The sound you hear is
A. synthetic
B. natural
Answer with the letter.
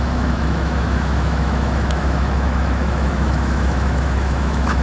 A